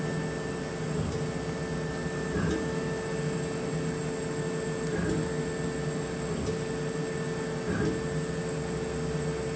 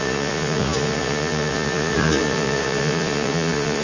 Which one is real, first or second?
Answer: first